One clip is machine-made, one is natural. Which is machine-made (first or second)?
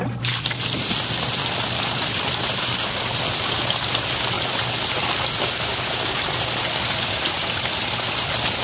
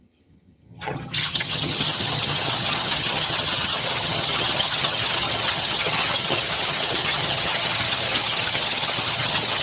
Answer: second